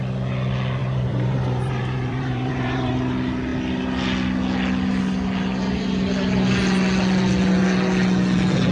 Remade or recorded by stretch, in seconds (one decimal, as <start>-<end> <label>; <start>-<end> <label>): 0.0-0.8 recorded; 0.8-2.9 remade; 2.9-8.7 recorded